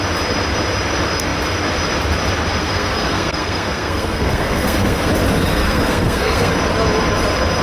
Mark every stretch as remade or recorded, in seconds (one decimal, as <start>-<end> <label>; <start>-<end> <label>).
0.0-2.6 recorded; 2.6-5.1 remade; 5.1-5.5 recorded; 5.5-6.5 remade; 6.5-7.6 recorded